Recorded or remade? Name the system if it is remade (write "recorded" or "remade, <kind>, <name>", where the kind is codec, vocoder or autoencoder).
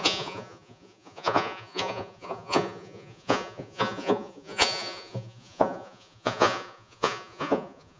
remade, vocoder, Vocos